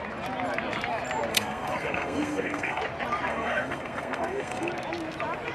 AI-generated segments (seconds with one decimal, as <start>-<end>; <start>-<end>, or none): 1.3-2.8; 3.3-4.7